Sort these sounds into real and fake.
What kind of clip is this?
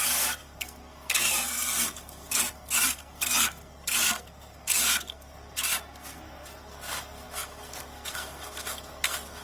fake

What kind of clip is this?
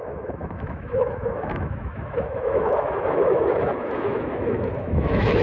fake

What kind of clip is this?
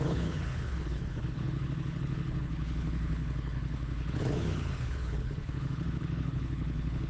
fake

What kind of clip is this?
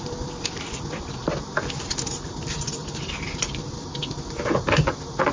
real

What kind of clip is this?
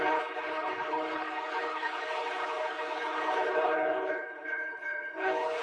fake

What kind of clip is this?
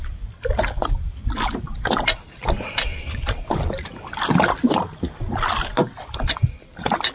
real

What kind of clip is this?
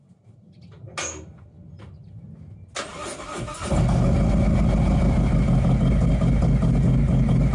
real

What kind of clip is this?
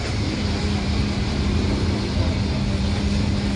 real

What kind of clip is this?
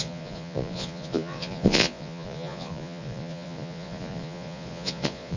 fake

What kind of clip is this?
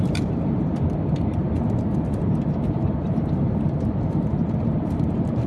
fake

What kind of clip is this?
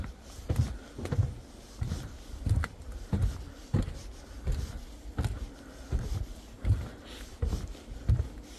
real